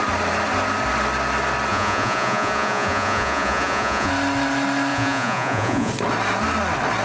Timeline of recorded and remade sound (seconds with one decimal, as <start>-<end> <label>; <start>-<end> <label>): 0.0-1.7 recorded; 1.7-4.1 remade; 4.1-4.9 recorded; 4.9-5.9 remade; 5.9-7.0 recorded